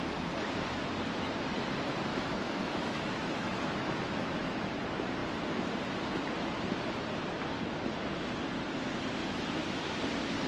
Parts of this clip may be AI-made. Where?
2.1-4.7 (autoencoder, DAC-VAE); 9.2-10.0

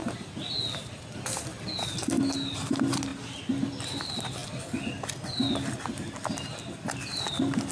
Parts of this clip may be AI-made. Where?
none

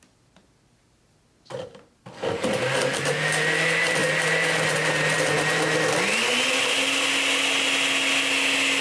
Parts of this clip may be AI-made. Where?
none

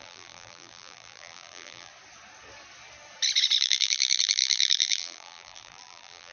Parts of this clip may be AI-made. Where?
0.0-1.9 (vocoder, BigVGAN v2); 3.6-6.3